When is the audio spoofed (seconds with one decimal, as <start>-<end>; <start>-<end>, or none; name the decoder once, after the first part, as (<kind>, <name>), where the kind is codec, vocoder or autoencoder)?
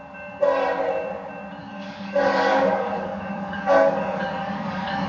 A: 1.6-5.1 (codec, DAC)